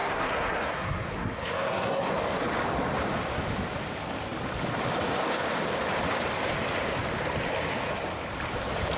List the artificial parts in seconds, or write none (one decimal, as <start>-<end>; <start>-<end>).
0.0-2.1